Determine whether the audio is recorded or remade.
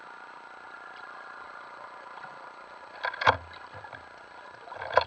recorded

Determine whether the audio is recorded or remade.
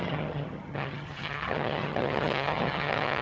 remade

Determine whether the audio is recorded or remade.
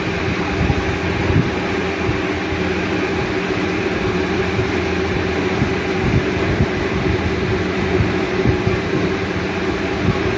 recorded